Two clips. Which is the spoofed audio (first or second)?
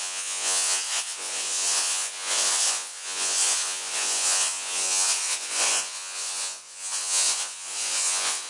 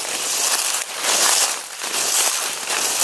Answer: first